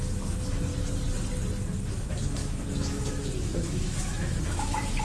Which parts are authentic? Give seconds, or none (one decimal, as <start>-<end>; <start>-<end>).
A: 0.7-1.9